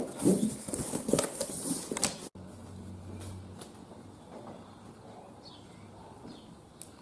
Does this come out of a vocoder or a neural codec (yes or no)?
no